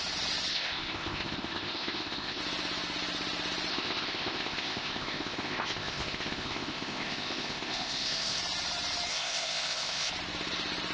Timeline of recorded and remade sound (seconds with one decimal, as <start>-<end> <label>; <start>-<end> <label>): 0.0-0.5 recorded; 0.5-2.4 remade; 2.4-3.7 recorded; 3.7-8.4 remade; 8.4-9.1 recorded; 9.1-10.1 remade; 10.1-10.9 recorded